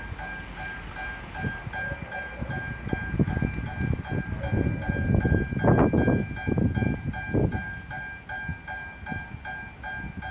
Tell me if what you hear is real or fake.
real